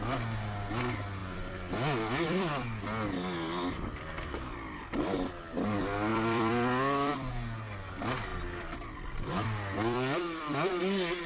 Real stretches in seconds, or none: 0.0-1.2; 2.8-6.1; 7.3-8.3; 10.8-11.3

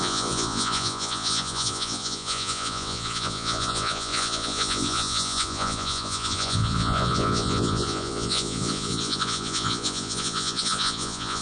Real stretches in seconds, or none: none

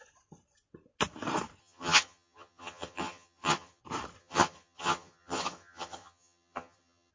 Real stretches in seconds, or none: 0.0-1.6; 3.8-4.2

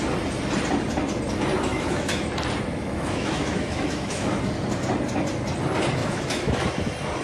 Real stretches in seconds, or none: 0.0-1.7; 2.3-2.7; 4.4-6.0; 6.7-7.2

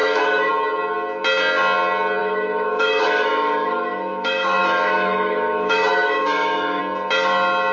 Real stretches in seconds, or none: 0.5-2.2; 6.8-7.7

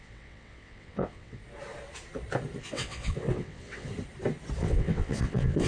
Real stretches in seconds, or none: 1.4-2.6; 3.9-4.6